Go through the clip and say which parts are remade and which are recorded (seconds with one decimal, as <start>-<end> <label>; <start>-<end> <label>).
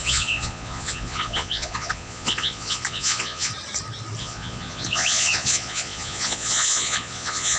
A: 0.0-3.5 remade; 3.5-4.2 recorded; 4.2-7.6 remade